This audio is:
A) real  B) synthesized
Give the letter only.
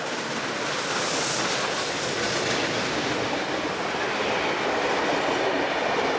A